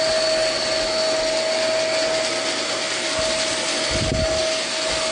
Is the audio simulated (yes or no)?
no